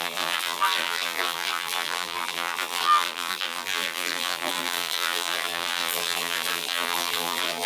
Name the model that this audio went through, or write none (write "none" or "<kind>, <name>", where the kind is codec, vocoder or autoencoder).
vocoder, BigVGAN v2